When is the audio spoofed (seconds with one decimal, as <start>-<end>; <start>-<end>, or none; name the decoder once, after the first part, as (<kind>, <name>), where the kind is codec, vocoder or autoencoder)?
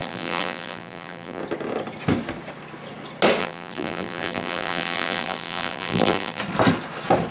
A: 0.0-1.4 (vocoder, BigVGAN v2); 3.4-6.4